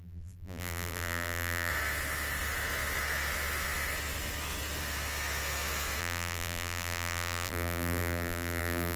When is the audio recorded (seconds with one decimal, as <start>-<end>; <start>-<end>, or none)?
1.7-6.0